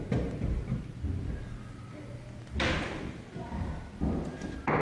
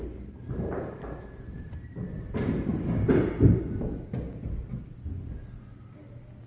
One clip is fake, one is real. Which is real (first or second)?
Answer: second